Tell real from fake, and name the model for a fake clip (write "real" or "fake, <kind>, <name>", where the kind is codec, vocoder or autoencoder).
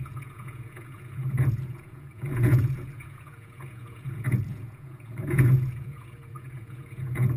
fake, vocoder, Vocos